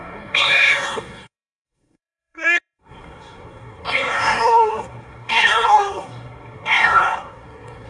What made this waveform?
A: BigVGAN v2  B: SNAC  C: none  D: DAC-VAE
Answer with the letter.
B